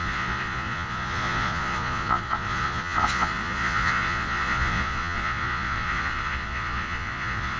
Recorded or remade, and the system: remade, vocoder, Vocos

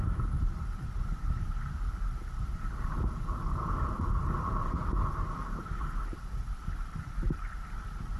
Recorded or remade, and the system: recorded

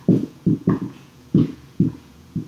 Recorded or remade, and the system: remade, vocoder, Vocos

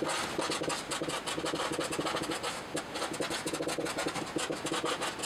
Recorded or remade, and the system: recorded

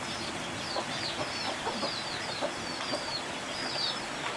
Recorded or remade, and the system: recorded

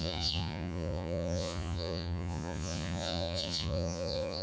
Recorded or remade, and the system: remade, vocoder, Vocos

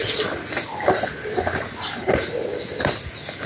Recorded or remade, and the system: recorded